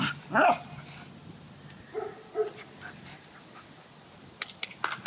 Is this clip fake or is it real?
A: real